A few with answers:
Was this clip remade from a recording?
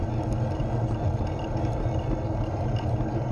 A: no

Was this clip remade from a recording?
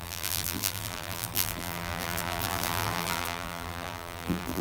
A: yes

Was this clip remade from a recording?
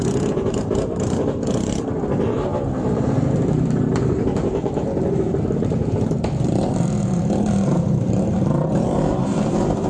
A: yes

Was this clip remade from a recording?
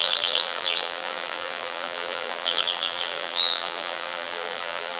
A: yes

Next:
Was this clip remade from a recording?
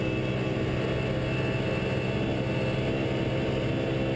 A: no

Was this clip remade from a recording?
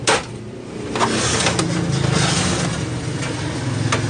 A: no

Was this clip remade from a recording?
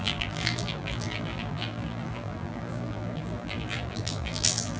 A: yes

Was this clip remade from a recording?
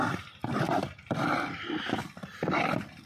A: yes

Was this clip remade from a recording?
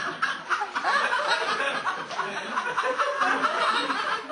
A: no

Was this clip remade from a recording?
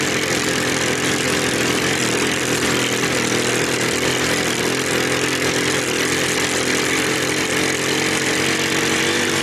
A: no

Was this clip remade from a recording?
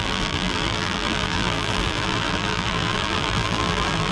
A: yes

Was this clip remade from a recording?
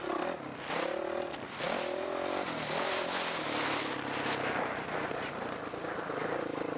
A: no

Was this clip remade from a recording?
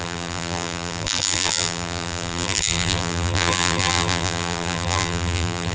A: yes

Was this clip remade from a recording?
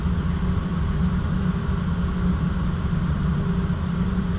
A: no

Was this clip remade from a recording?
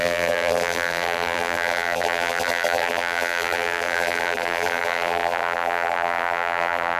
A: yes